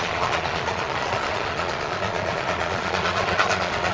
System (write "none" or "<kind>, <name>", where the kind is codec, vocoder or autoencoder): vocoder, Vocos